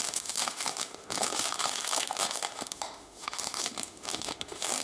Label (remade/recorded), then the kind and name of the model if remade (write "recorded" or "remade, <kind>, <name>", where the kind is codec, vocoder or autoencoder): remade, autoencoder, DAC-VAE